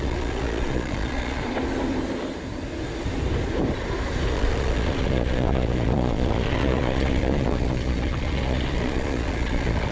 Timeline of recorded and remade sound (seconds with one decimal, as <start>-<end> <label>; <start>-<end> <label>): 0.0-1.4 remade; 1.4-4.3 recorded; 4.3-9.9 remade